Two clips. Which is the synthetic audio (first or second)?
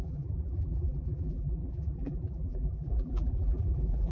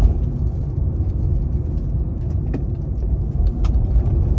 first